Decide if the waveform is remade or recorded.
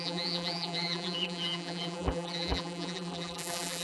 remade